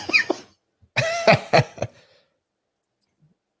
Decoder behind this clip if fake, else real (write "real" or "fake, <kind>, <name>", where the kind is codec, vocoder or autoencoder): real